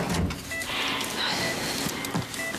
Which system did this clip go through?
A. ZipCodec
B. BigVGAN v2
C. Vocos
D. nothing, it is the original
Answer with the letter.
D